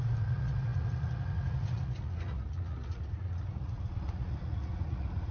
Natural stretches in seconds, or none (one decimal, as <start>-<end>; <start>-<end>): none